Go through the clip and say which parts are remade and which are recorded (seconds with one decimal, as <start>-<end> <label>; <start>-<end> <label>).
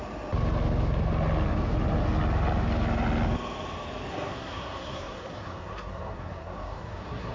0.0-4.1 recorded; 4.1-7.3 remade